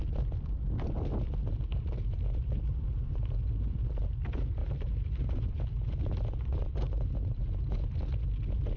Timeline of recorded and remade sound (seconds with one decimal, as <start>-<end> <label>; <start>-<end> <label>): 0.0-1.4 recorded; 1.4-2.6 remade; 2.6-4.6 recorded; 4.6-7.1 remade; 7.1-8.8 recorded